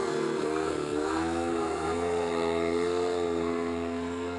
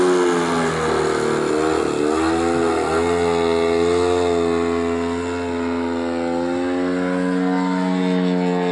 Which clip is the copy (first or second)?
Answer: first